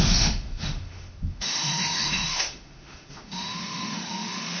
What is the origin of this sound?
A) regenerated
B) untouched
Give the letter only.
A